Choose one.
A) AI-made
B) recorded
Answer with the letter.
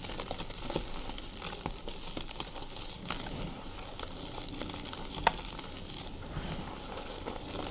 B